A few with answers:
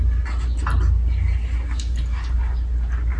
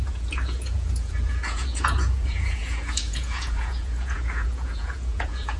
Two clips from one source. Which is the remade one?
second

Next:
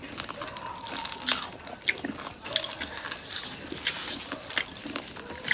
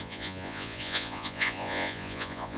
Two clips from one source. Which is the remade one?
second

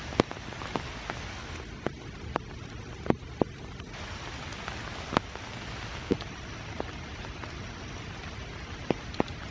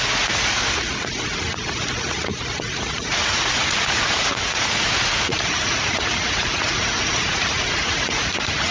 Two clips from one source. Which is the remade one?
second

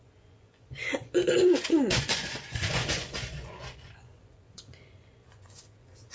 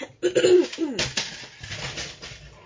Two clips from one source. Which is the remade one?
first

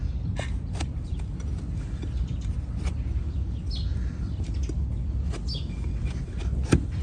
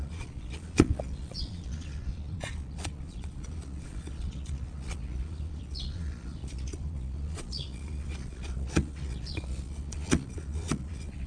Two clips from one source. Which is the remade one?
second